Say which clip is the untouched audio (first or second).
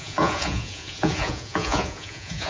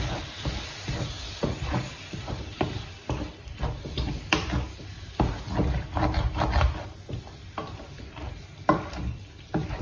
second